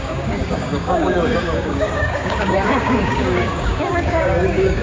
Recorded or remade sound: remade